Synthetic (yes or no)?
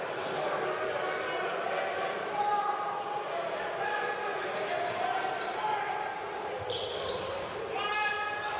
no